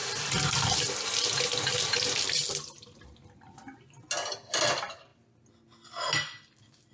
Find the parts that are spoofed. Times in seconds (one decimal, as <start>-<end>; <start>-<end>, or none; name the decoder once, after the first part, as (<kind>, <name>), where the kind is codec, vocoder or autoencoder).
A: none